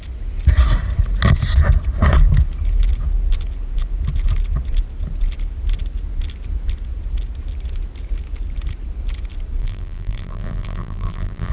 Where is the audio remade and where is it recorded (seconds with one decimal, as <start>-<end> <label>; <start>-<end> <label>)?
0.0-9.6 recorded; 9.6-11.5 remade